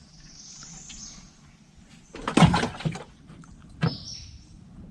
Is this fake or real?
real